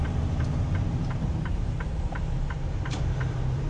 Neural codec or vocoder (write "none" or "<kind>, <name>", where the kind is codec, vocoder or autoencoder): vocoder, BigVGAN v2